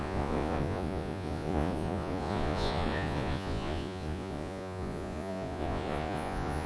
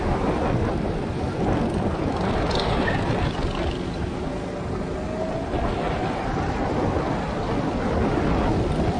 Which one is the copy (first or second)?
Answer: first